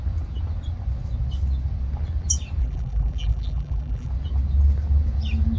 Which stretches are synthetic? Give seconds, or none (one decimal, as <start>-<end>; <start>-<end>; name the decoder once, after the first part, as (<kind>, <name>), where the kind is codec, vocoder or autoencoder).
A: 2.6-4.1 (vocoder, BigVGAN v2)